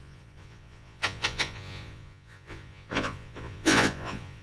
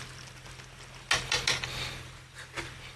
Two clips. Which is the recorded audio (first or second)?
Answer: second